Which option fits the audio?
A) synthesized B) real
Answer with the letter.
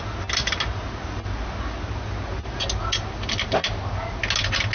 B